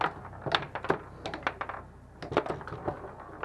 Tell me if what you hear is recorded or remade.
recorded